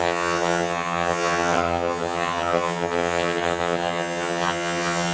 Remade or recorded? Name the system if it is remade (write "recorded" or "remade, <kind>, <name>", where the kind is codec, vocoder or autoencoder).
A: remade, vocoder, HiFi-GAN